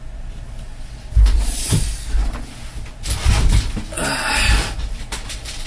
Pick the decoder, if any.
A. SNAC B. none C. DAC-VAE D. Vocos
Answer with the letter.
B